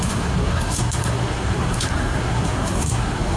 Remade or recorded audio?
remade